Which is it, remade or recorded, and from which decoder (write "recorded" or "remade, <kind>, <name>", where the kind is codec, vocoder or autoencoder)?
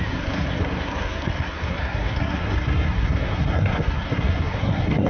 remade, codec, SNAC